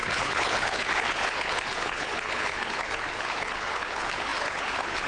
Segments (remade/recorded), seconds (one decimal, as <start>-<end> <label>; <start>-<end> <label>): 0.0-5.1 remade